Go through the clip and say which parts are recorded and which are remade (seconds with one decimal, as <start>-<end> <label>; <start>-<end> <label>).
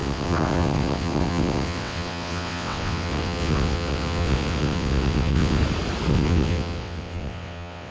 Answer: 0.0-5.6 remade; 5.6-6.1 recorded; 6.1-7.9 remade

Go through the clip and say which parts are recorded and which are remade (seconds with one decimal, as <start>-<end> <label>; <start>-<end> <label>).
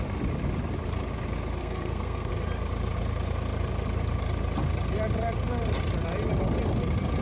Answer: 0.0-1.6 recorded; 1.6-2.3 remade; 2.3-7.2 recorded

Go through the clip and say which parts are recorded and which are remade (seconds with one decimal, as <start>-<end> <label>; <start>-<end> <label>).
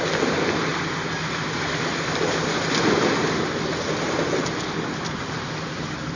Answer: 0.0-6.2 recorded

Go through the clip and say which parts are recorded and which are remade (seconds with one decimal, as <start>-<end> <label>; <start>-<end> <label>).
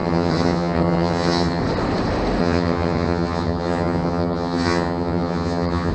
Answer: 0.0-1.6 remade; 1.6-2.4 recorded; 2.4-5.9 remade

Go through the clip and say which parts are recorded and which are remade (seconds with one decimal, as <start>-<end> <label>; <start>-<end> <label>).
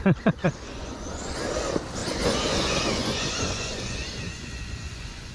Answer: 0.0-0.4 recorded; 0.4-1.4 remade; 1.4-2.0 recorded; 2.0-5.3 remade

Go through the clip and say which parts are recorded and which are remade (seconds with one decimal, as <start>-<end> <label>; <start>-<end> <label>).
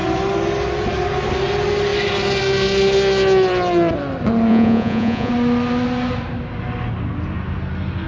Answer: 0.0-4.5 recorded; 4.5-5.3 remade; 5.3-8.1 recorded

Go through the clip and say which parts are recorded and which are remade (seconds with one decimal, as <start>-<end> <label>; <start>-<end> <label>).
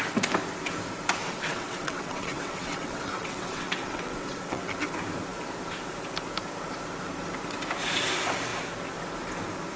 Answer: 0.0-1.2 recorded; 1.2-4.7 remade; 4.7-9.8 recorded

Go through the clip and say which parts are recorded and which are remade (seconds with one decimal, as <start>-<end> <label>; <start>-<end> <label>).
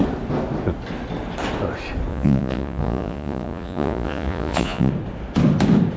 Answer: 0.0-2.1 recorded; 2.1-4.9 remade; 4.9-6.0 recorded